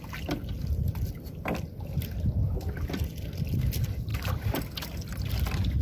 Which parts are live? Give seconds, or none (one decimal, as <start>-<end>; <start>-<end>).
0.0-5.8